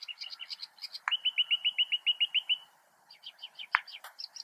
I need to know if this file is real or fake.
real